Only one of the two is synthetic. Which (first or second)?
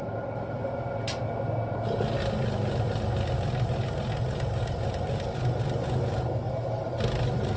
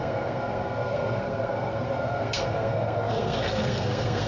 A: second